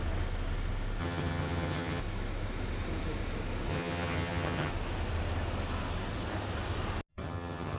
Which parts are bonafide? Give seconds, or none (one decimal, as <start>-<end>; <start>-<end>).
0.0-1.0; 2.0-3.7; 4.7-7.1